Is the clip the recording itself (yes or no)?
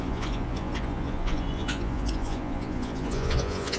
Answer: no